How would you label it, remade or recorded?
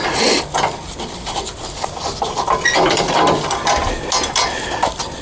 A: recorded